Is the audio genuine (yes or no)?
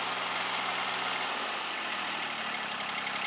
yes